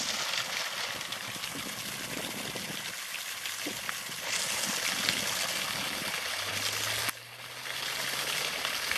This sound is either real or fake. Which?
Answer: real